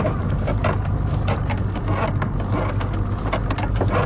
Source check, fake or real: real